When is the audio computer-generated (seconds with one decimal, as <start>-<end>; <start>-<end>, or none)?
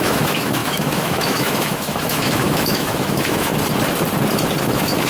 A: 0.0-3.5; 4.6-5.1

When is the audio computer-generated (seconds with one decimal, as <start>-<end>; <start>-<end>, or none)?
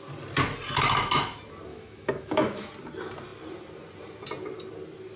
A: 1.7-2.7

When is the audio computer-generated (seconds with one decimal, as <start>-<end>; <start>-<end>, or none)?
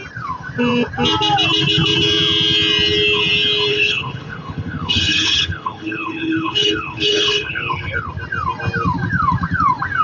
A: 3.7-8.1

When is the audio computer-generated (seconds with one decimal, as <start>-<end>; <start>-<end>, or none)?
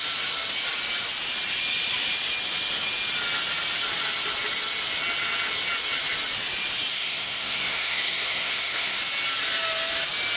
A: 6.9-9.0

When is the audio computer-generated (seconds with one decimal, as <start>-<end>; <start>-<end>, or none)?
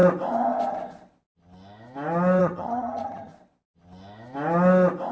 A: 2.4-3.3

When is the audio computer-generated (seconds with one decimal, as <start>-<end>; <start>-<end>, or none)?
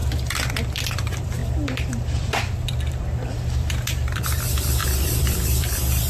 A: 0.5-6.1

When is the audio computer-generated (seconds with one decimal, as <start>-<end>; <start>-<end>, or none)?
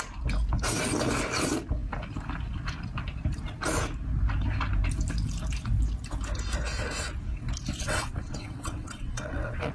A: 7.8-9.7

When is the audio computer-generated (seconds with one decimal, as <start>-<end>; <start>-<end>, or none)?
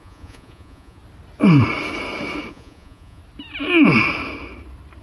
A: 0.0-1.0; 2.5-3.2